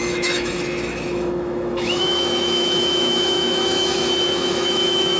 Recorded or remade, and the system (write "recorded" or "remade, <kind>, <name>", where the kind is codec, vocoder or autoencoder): remade, autoencoder, DAC-VAE